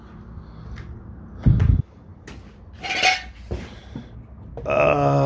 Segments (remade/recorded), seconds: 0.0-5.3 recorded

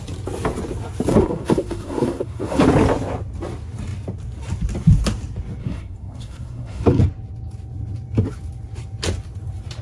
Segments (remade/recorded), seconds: 0.0-1.1 recorded; 1.1-2.6 remade; 2.6-5.6 recorded; 5.6-7.0 remade; 7.0-9.8 recorded